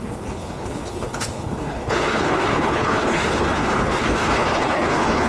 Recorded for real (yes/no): no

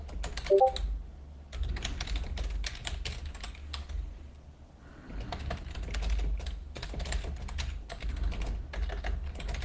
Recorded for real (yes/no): yes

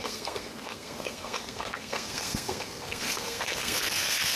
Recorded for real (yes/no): no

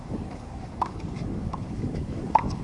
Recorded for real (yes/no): no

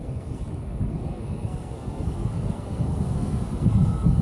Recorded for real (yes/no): no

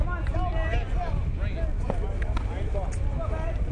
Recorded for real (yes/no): yes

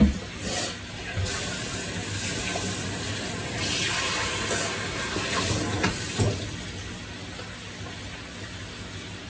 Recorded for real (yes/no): yes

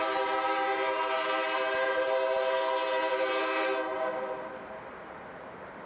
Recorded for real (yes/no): no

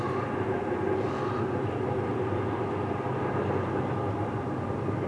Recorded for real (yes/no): yes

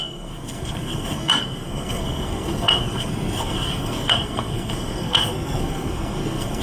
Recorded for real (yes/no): no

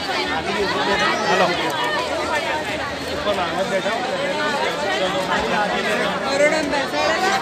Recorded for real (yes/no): yes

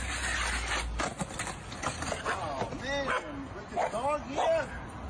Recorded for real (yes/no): yes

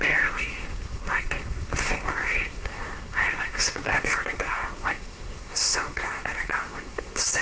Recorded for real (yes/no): no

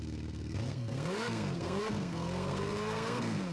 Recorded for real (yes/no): no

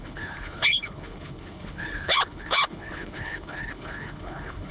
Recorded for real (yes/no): no